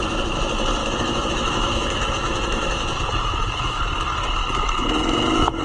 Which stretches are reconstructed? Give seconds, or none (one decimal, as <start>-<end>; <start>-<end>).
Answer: 0.8-3.8; 4.4-5.6